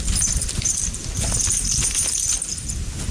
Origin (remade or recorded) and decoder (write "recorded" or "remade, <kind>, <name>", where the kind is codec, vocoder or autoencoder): recorded